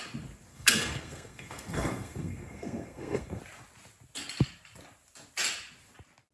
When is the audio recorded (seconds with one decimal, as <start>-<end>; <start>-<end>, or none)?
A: 0.0-0.5; 3.4-6.3